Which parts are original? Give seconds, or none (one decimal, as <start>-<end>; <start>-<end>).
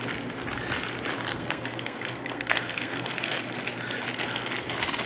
0.0-1.3; 3.4-5.1